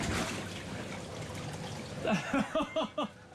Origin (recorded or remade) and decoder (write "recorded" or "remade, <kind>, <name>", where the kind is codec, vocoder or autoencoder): recorded